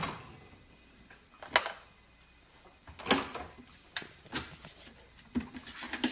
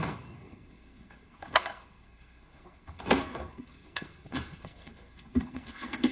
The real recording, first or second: first